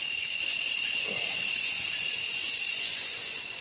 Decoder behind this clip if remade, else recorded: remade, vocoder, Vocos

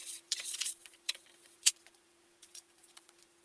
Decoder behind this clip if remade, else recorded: remade, vocoder, Vocos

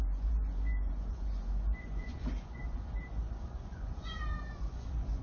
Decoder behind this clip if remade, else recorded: remade, vocoder, Vocos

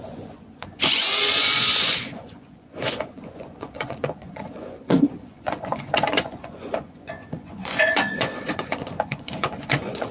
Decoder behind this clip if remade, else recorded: remade, vocoder, Vocos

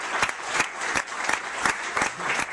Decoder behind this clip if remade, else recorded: remade, vocoder, Vocos